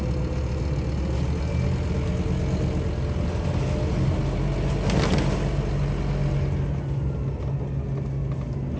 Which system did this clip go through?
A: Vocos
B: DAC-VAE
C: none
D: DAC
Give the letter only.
C